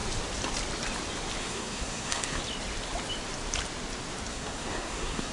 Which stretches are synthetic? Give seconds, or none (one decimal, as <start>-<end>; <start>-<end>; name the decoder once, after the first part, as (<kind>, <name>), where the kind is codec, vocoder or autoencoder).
1.4-2.4 (codec, SNAC); 4.3-5.3